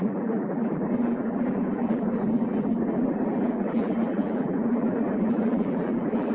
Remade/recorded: remade